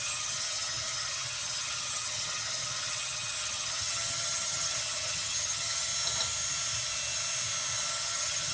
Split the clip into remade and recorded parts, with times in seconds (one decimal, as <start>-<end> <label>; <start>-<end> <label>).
0.0-5.9 remade; 5.9-7.9 recorded; 7.9-8.5 remade